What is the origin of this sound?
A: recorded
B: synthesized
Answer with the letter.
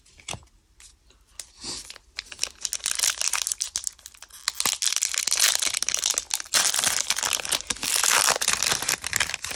A